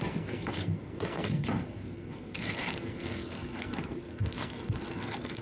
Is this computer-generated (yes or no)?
yes